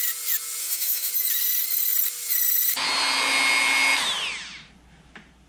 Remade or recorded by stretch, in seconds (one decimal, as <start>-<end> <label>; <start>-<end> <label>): 0.0-0.6 recorded; 0.6-1.1 remade; 1.1-5.5 recorded